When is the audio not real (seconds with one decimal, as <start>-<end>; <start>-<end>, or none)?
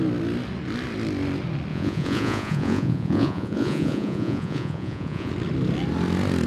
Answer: 1.7-5.3